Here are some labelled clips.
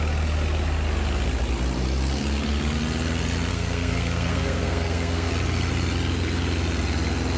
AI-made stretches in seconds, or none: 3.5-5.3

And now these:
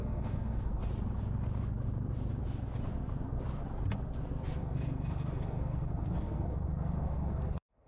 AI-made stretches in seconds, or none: 0.0-0.9; 4.6-7.9

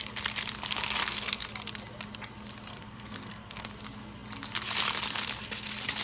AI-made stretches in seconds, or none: 1.0-1.5; 2.7-3.7

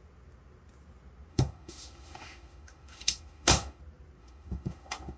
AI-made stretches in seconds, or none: 1.3-3.8; 4.2-5.2

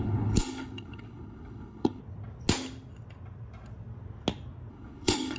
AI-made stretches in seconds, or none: 0.0-2.0; 4.7-5.4

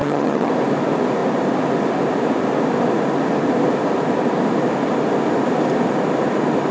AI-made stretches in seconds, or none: 0.0-0.5